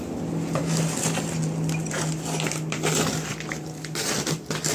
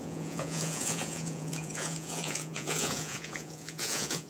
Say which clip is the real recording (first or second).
first